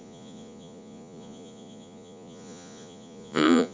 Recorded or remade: remade